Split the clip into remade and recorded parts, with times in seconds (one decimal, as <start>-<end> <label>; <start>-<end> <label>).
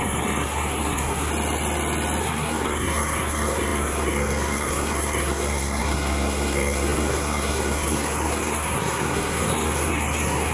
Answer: 0.0-1.3 remade; 1.3-2.2 recorded; 2.2-10.5 remade